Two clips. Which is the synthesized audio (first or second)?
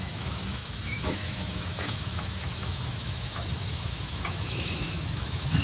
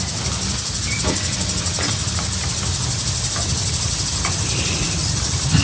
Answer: first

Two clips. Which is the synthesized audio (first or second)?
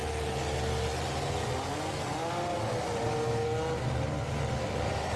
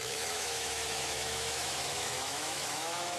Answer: second